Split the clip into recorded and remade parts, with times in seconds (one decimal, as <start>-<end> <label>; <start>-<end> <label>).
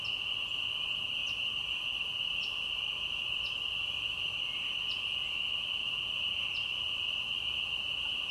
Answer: 0.0-8.3 recorded